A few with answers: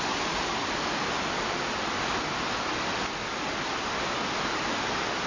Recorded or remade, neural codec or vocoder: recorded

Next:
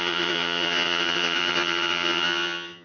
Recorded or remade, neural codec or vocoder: remade, vocoder, HiFi-GAN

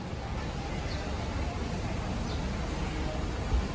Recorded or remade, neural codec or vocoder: recorded